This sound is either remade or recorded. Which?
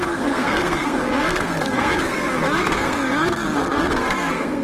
remade